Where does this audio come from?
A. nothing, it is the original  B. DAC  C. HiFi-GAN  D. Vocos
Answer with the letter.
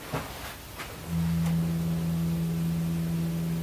A